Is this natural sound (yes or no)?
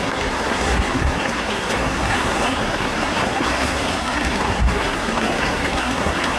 no